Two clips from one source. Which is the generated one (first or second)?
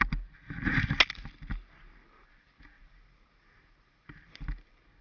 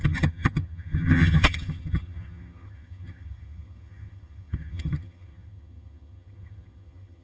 second